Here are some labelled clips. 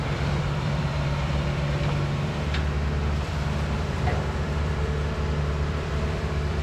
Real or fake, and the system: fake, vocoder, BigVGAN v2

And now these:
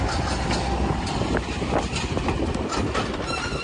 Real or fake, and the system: real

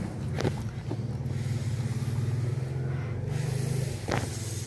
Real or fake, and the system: real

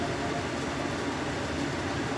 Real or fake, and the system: real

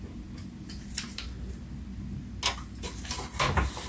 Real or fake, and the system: real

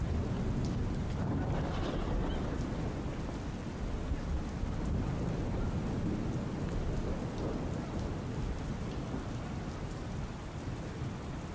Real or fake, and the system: real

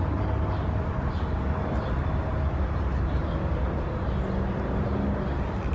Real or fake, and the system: real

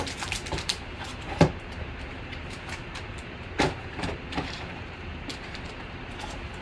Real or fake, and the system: fake, vocoder, BigVGAN v2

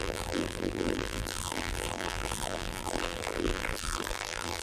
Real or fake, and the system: fake, vocoder, BigVGAN v2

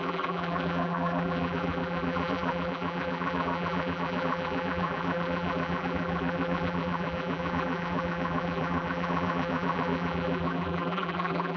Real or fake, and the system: fake, vocoder, BigVGAN v2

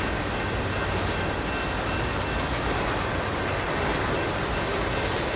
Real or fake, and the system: real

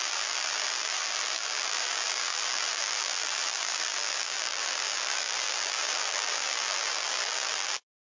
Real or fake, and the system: fake, vocoder, BigVGAN v2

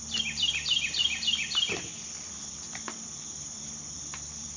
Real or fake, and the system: fake, vocoder, BigVGAN v2